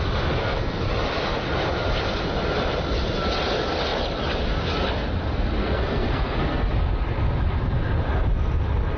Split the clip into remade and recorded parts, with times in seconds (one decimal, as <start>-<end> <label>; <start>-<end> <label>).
0.0-0.4 recorded; 0.4-0.9 remade; 0.9-5.6 recorded; 5.6-6.7 remade; 6.7-9.0 recorded

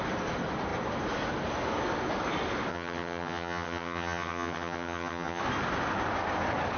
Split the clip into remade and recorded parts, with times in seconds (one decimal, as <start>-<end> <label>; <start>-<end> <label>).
0.0-2.7 recorded; 2.7-5.4 remade; 5.4-6.8 recorded